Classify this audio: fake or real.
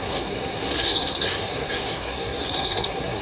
fake